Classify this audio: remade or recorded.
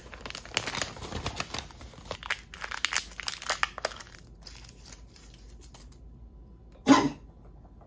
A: recorded